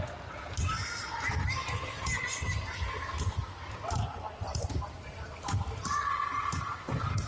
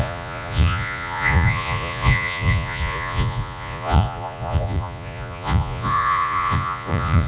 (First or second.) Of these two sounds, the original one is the first